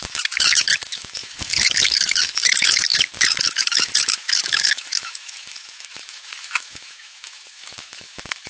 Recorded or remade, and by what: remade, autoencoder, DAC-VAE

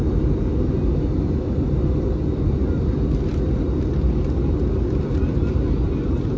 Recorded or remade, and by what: recorded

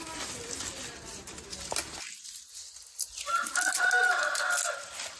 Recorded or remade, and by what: recorded